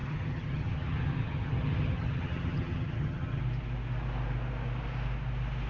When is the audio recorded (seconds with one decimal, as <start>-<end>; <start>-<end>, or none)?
3.4-5.7